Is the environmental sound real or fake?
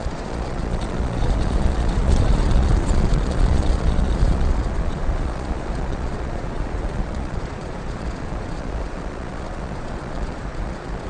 fake